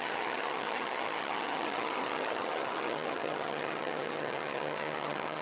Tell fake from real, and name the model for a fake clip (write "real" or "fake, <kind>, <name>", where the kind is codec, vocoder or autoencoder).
fake, vocoder, HiFi-GAN